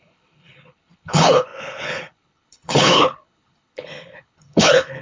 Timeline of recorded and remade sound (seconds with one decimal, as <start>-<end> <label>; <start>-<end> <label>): 0.0-5.0 remade